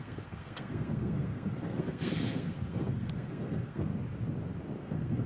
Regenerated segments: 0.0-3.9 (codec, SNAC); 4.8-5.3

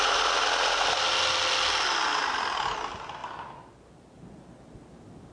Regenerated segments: none

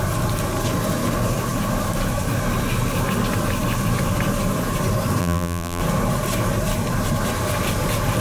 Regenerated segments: 5.2-5.8 (vocoder, BigVGAN v2)